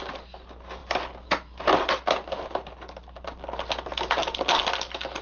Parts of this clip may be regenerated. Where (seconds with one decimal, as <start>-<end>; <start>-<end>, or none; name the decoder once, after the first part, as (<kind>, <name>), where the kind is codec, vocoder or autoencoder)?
none